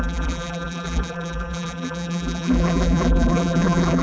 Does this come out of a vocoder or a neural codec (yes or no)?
yes